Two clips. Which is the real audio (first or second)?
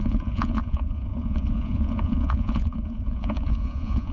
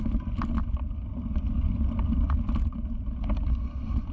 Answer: second